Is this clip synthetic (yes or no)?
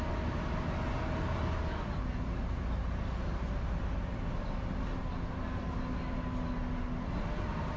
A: no